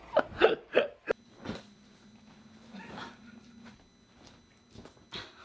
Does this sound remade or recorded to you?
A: recorded